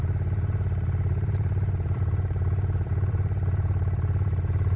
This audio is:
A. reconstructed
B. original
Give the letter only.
A